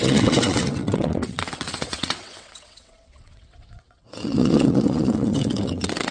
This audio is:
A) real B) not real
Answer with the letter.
B